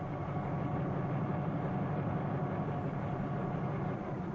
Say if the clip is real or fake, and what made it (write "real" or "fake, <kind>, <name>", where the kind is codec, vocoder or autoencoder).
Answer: real